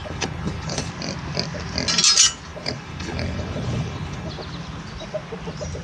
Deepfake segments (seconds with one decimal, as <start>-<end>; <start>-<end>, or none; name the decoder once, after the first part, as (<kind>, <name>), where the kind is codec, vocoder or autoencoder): 0.0-0.9 (codec, HILCodec); 2.5-4.3